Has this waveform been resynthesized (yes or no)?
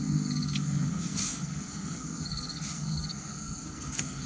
yes